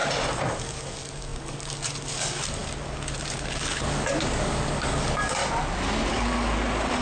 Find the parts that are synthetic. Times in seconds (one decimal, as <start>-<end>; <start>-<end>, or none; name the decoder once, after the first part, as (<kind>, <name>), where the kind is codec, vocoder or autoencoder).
0.6-5.4 (codec, DAC); 6.1-7.0